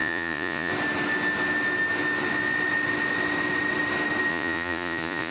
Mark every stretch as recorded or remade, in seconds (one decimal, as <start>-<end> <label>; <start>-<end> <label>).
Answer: 0.0-0.7 remade; 0.7-4.3 recorded; 4.3-5.3 remade